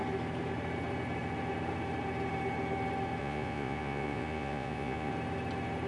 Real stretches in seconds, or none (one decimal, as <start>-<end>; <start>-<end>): 0.0-3.2; 5.1-5.9